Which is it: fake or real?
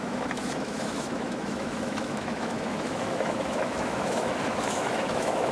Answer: fake